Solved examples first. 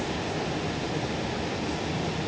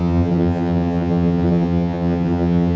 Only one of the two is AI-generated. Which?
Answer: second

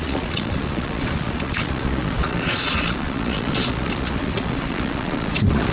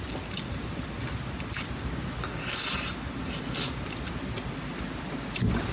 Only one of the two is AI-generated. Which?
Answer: first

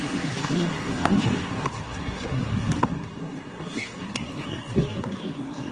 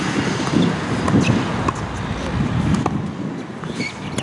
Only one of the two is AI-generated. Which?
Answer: first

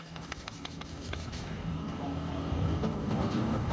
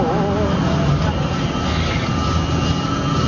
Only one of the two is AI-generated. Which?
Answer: first